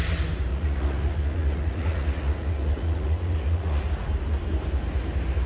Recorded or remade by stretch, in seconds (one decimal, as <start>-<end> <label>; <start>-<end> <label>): 0.0-0.5 recorded; 0.5-3.8 remade; 3.8-5.5 recorded